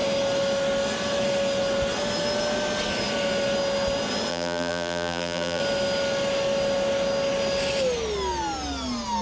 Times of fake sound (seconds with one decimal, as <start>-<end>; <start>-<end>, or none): 4.3-5.6